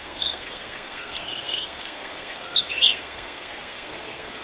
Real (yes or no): no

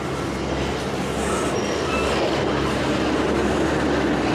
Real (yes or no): yes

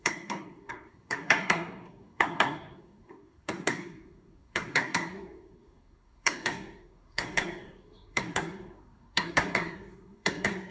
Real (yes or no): no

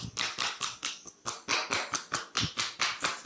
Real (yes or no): yes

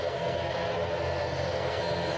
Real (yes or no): no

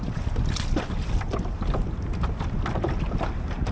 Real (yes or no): yes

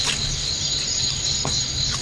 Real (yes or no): yes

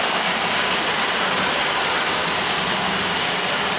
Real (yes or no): yes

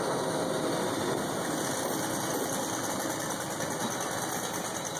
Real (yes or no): yes